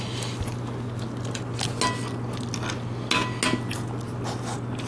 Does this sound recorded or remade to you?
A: recorded